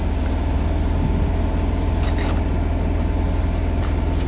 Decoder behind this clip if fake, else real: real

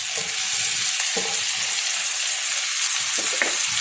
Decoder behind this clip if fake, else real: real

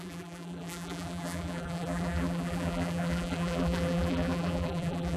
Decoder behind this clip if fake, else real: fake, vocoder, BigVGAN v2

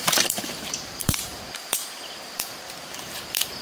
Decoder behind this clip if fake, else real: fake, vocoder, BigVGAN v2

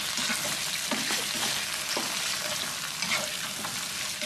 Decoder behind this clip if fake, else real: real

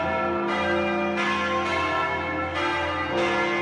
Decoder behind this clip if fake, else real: real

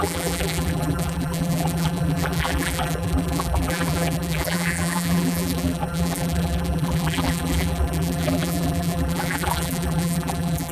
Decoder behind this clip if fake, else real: fake, vocoder, BigVGAN v2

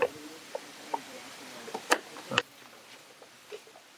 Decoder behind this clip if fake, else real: fake, vocoder, BigVGAN v2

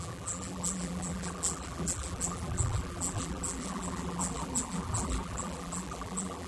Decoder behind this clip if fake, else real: fake, vocoder, BigVGAN v2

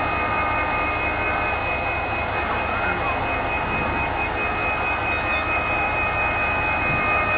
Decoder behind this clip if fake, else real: real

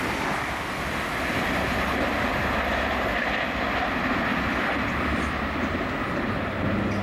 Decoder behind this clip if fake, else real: real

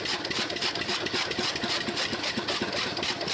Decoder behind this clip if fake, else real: fake, vocoder, BigVGAN v2